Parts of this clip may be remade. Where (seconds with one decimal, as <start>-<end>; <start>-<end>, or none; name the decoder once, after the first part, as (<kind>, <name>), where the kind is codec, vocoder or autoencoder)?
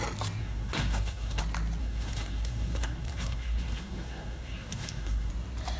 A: 0.4-1.4 (codec, SNAC); 1.8-5.3